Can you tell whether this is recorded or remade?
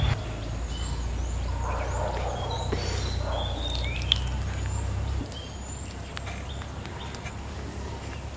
recorded